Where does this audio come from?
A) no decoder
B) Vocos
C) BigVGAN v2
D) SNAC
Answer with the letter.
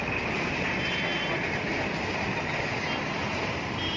A